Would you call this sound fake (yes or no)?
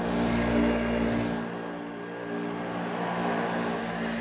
no